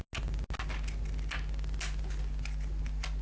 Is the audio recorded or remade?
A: recorded